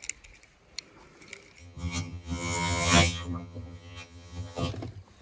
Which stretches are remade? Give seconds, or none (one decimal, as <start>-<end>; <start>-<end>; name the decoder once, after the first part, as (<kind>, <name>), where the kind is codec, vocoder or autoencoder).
1.6-4.7 (vocoder, HiFi-GAN)